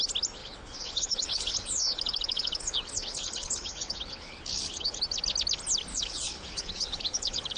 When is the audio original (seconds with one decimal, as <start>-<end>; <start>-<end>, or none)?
0.0-0.4; 5.0-5.9

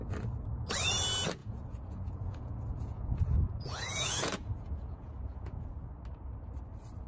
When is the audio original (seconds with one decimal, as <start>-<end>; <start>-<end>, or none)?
0.0-1.4; 5.7-7.1

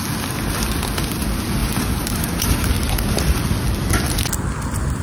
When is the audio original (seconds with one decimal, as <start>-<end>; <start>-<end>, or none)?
0.0-1.6; 2.7-5.0

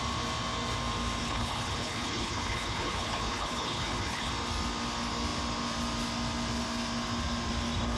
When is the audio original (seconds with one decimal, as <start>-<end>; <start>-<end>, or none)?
0.0-1.2; 4.3-8.0

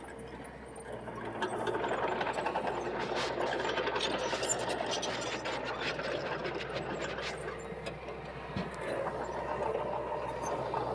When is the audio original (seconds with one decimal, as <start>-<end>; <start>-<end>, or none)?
0.0-10.9

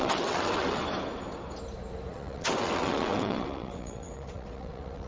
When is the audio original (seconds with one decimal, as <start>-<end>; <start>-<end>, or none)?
0.8-2.1

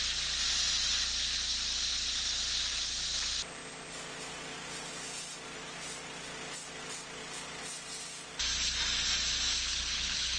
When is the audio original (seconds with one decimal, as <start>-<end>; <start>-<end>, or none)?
0.0-9.6

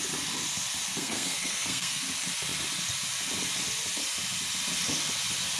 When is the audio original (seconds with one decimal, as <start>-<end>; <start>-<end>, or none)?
0.0-0.9; 2.0-5.6